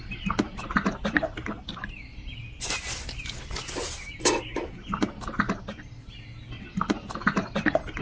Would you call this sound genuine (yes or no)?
yes